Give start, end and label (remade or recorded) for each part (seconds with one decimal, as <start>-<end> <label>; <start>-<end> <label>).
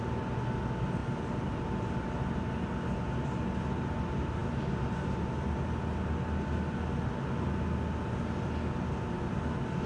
0.0-9.9 recorded